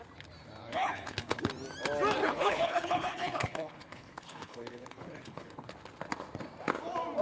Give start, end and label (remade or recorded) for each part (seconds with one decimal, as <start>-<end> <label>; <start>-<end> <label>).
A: 0.0-0.6 recorded; 0.6-1.4 remade; 1.4-2.2 recorded; 2.2-5.7 remade; 5.7-7.2 recorded